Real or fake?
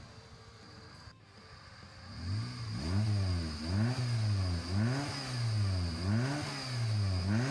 real